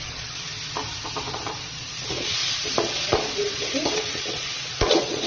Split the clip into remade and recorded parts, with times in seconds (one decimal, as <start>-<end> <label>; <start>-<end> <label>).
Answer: 0.0-0.5 remade; 0.5-1.2 recorded; 1.2-5.3 remade